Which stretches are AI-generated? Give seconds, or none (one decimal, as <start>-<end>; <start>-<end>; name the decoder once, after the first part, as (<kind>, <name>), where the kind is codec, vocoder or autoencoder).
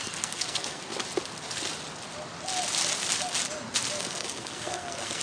0.0-0.9 (codec, SNAC); 4.0-5.2